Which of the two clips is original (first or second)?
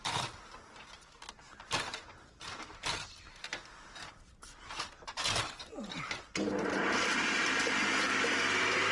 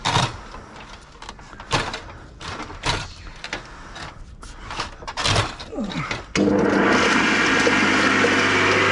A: second